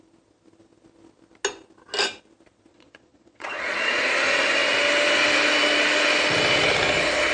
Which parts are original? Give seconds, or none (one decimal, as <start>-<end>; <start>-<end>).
0.0-2.7; 4.0-7.3